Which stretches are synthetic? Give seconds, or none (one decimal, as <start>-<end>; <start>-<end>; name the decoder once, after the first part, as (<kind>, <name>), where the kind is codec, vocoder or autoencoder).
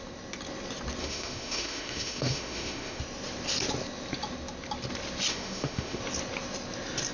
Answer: 1.0-3.0 (autoencoder, DAC-VAE); 5.3-6.0